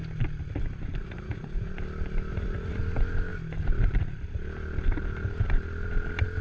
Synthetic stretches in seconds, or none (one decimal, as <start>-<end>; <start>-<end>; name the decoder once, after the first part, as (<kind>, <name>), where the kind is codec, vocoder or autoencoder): 1.0-1.7 (vocoder, Vocos); 2.3-2.8